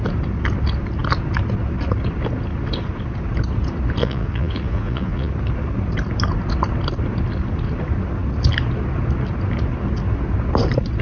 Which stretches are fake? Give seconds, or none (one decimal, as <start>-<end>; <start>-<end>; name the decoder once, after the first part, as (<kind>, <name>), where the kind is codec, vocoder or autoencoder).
4.0-5.3 (vocoder, Vocos)